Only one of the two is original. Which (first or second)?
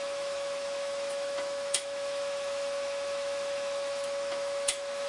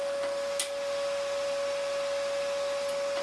second